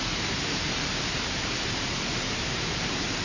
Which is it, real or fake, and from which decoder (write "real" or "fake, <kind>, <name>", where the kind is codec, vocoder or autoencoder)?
fake, vocoder, BigVGAN v2